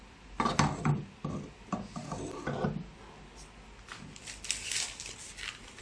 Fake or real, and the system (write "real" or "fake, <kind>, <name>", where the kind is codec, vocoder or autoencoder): real